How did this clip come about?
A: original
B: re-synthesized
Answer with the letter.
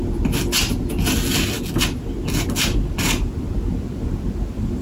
A